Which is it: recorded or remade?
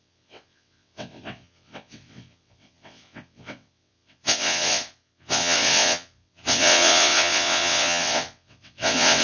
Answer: remade